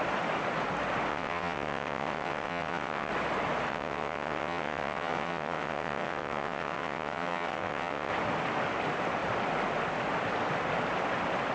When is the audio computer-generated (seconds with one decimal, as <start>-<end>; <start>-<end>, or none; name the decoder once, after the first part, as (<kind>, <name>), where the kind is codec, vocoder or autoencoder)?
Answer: 1.1-3.1 (vocoder, WaveNeXt); 3.7-8.1